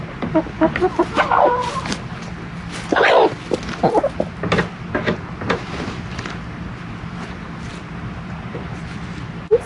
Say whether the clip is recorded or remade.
recorded